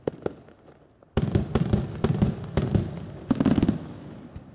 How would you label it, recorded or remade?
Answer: recorded